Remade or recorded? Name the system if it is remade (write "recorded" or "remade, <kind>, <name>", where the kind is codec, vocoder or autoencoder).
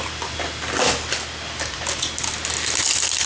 recorded